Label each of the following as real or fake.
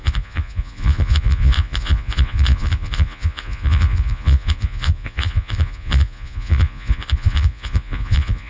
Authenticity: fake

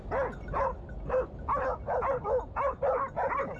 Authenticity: real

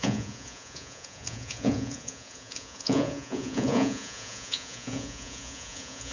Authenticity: fake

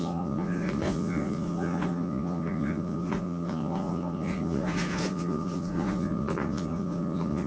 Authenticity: fake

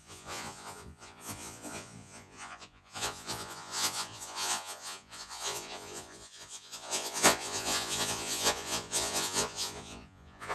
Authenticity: fake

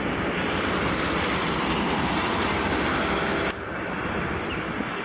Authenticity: real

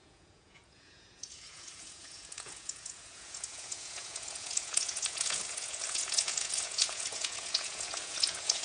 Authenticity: fake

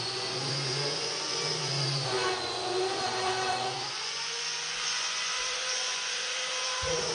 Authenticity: fake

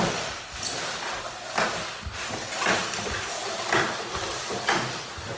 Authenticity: real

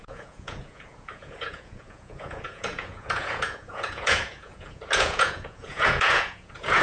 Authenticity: fake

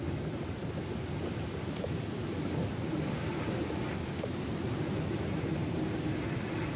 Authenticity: real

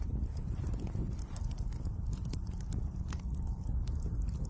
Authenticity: real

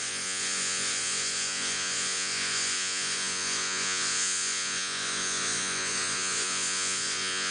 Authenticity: fake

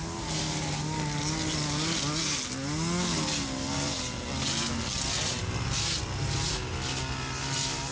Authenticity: real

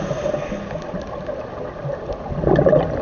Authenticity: real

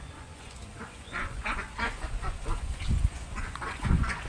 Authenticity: fake